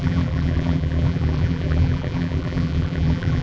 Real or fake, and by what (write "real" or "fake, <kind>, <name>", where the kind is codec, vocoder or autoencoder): fake, vocoder, BigVGAN v2